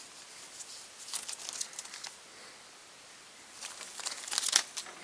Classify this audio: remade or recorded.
recorded